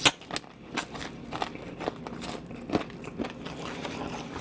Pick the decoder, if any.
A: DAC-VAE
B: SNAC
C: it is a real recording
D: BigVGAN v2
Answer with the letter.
C